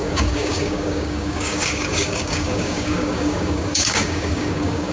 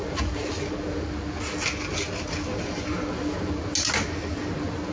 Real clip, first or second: second